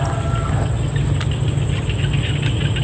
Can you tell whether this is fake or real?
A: real